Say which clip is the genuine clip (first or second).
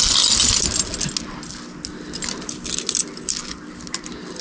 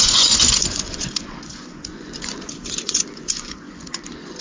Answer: first